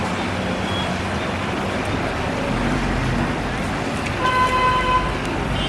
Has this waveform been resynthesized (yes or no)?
no